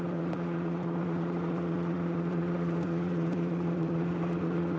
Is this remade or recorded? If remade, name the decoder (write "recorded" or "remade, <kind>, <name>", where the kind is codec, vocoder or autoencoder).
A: remade, vocoder, Vocos